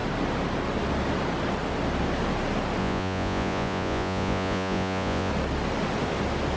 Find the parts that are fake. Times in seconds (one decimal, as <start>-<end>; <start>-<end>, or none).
2.8-5.3

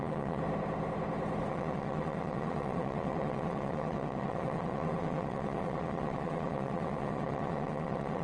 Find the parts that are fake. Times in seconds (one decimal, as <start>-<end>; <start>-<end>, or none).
0.0-0.4; 1.5-8.2

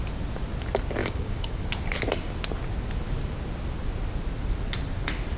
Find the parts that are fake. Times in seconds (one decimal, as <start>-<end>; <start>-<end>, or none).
1.0-1.6

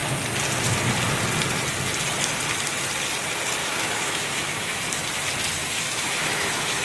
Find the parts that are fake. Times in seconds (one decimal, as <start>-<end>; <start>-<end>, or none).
3.6-4.8; 5.6-6.8

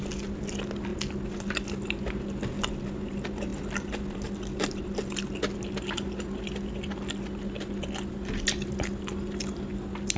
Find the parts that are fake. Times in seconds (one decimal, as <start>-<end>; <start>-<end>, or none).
none

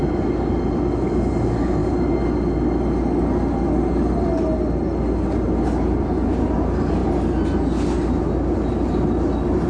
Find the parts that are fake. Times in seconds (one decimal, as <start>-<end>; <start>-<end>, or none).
none

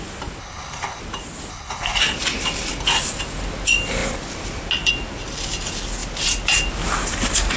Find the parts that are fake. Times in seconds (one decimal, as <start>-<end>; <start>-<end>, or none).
0.4-1.0; 1.5-2.0

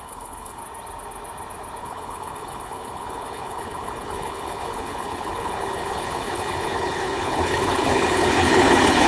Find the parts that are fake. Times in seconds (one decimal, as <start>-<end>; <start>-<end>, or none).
0.0-0.6; 1.8-9.1